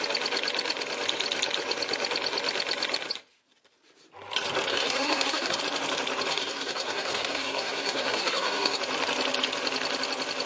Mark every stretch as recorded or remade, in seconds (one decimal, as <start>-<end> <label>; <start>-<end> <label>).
0.0-4.7 recorded; 4.7-5.6 remade; 5.6-6.3 recorded; 6.3-8.8 remade; 8.8-10.5 recorded